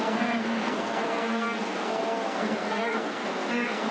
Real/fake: fake